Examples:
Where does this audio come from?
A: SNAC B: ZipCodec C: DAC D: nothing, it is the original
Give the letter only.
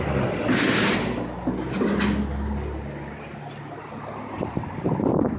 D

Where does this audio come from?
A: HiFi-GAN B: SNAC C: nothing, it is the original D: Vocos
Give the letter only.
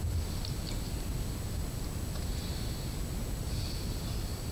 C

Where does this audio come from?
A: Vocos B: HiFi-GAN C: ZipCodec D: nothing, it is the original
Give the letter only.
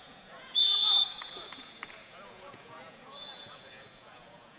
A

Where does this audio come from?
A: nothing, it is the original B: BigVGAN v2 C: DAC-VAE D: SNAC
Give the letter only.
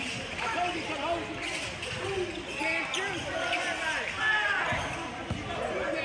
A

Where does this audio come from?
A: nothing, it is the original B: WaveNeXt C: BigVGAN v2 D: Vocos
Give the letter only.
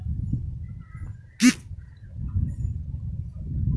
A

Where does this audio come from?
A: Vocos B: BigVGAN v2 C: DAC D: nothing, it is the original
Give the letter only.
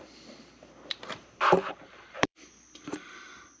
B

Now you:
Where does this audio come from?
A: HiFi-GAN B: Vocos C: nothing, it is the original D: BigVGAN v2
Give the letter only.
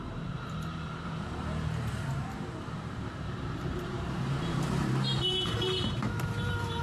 D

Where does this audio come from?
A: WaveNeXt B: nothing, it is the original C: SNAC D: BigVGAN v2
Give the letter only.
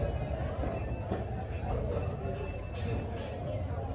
B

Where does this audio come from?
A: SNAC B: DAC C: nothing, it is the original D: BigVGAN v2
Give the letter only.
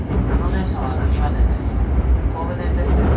C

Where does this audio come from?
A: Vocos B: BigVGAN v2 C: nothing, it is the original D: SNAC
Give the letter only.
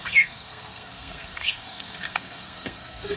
D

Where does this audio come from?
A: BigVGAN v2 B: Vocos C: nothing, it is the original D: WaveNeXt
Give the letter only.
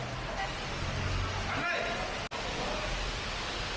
C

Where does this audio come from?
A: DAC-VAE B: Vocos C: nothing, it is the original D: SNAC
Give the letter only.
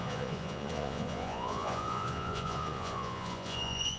B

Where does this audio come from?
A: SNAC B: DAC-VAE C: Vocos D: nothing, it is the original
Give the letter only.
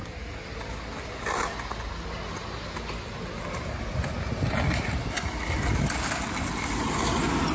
D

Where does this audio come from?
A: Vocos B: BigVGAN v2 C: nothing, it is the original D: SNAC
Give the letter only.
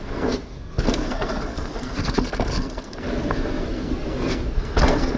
D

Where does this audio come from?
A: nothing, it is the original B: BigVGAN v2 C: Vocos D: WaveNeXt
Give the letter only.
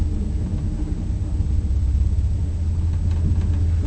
A